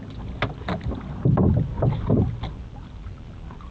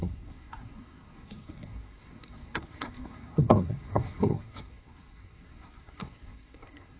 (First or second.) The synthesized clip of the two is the second